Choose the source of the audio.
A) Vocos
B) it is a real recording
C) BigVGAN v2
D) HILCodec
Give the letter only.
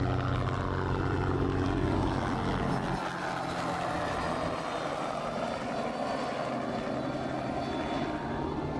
B